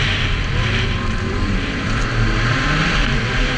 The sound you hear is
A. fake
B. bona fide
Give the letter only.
A